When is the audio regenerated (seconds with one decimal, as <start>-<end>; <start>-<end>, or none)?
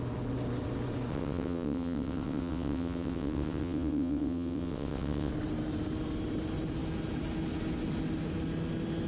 1.1-5.3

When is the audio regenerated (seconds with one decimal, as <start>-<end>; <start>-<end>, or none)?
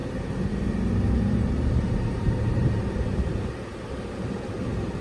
0.0-3.0